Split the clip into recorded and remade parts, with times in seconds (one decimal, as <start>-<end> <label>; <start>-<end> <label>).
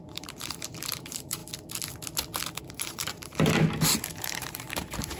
0.0-1.4 remade; 1.4-2.6 recorded; 2.6-3.3 remade; 3.3-4.0 recorded; 4.0-5.2 remade